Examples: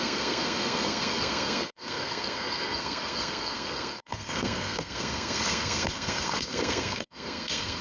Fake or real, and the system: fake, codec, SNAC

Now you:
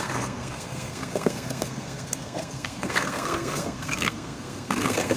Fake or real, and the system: fake, codec, SNAC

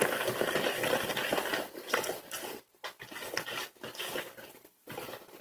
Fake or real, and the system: real